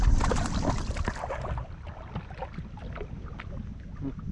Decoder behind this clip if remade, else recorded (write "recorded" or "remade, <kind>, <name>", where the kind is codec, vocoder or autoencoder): recorded